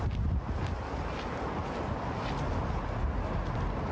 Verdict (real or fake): real